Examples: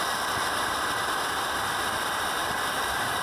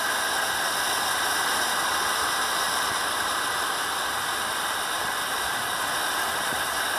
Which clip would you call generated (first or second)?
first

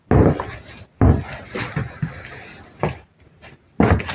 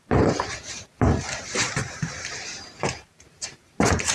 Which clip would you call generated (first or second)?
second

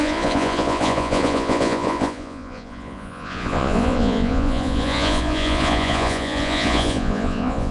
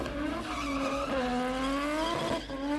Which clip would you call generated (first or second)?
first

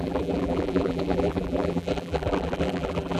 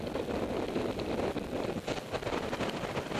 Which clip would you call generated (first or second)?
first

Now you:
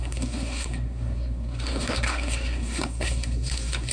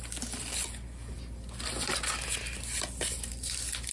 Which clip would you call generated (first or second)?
first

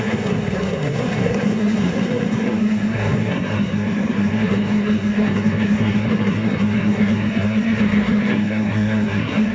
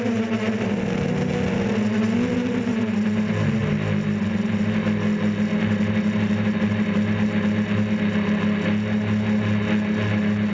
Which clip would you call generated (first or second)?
first